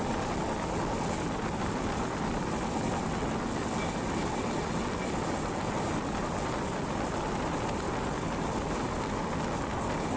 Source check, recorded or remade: recorded